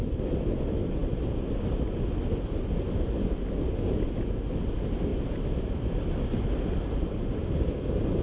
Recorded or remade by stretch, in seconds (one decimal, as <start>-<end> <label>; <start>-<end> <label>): 0.0-5.1 recorded; 5.1-6.2 remade; 6.2-8.2 recorded